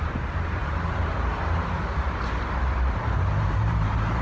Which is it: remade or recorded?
remade